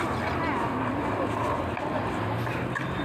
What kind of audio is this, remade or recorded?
recorded